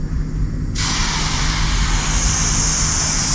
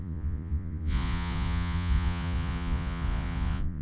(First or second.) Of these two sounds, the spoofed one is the second